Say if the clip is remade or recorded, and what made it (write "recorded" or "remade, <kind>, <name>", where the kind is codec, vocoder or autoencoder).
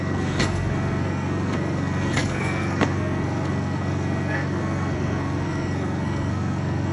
remade, codec, SNAC